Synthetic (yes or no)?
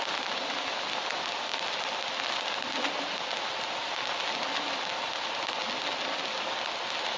no